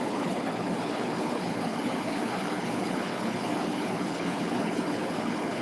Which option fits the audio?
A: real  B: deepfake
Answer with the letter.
B